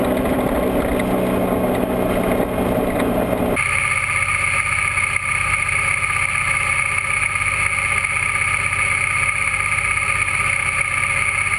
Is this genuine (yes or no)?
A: yes